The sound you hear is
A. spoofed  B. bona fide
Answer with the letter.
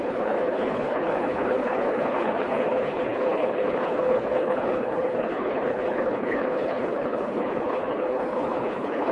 A